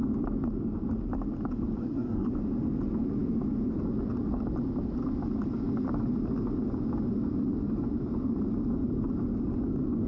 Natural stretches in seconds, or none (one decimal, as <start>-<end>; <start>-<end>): 0.0-1.8; 2.3-10.1